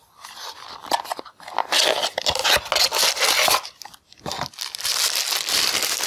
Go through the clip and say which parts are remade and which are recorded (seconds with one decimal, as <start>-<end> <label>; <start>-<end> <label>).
0.0-6.1 recorded